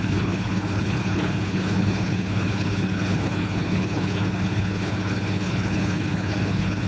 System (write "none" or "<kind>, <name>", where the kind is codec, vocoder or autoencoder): codec, HILCodec